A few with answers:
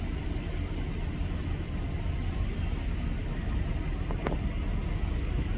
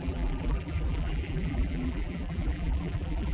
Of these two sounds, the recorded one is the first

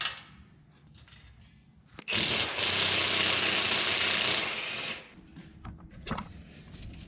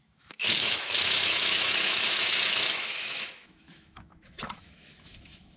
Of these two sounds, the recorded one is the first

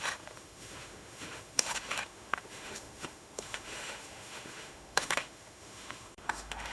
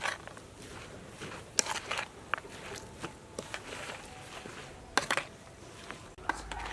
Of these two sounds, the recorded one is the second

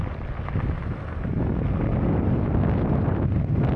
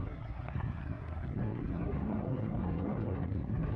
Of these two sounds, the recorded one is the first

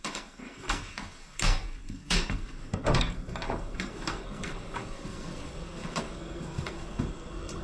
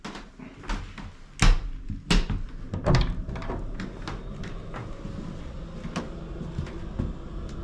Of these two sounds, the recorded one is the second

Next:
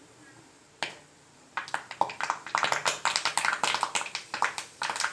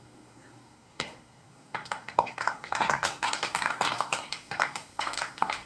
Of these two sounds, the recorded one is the first